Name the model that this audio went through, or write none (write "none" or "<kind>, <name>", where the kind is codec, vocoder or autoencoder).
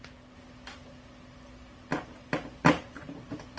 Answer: none